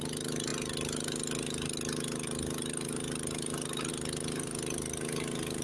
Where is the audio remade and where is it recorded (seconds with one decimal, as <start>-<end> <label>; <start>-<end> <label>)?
0.0-5.6 recorded